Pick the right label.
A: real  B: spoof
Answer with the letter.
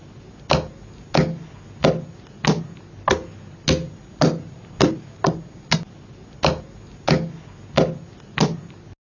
A